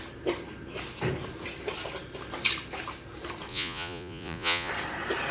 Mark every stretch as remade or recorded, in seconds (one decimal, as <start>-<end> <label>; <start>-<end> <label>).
0.0-3.5 recorded; 3.5-4.7 remade; 4.7-5.3 recorded